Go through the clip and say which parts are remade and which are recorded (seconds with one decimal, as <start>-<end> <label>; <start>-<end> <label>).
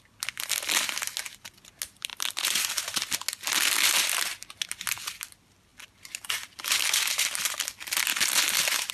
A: 0.0-8.9 recorded